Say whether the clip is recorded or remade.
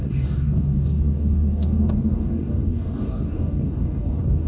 remade